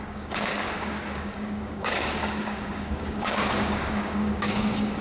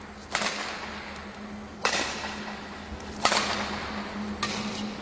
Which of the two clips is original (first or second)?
second